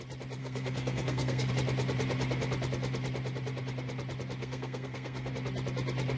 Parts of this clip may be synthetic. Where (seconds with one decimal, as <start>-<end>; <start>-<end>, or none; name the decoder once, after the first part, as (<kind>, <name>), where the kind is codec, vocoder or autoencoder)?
0.4-1.5 (codec, SNAC); 4.4-5.3